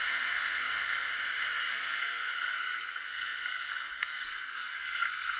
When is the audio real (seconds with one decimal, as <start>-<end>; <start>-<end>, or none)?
1.1-1.7